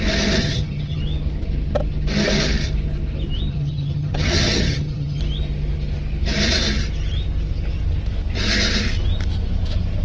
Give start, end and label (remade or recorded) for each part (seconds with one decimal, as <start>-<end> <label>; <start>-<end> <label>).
0.0-0.4 recorded; 0.4-1.0 remade; 1.0-3.5 recorded; 3.5-5.2 remade; 5.2-10.0 recorded